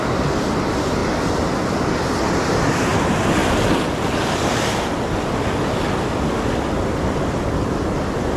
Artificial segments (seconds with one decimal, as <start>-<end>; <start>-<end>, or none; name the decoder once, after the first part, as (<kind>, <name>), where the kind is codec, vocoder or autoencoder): none